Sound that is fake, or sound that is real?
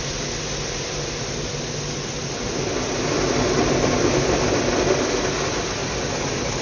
real